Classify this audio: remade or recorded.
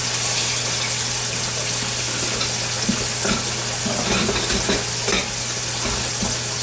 recorded